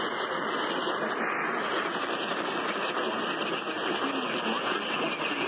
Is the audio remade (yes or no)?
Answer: no